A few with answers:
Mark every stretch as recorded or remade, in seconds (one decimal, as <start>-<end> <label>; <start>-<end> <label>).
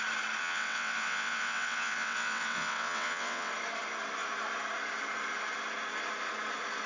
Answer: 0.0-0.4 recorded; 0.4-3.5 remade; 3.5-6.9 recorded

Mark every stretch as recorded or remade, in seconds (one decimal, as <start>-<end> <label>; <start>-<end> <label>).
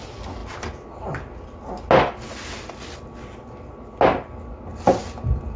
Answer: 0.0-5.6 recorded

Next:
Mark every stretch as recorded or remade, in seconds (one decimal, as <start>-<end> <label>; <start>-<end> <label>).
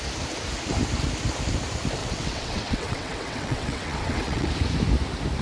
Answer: 0.0-2.0 recorded; 2.0-4.5 remade; 4.5-5.4 recorded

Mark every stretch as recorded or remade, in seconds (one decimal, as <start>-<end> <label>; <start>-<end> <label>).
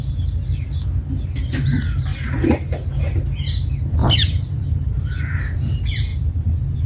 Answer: 0.0-4.0 recorded; 4.0-5.2 remade; 5.2-6.1 recorded; 6.1-6.9 remade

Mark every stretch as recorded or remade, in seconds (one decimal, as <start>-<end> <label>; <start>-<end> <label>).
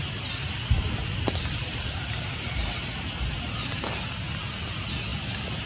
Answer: 0.0-1.0 recorded; 1.0-3.7 remade; 3.7-5.1 recorded; 5.1-5.7 remade